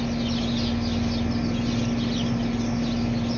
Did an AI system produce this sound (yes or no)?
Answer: no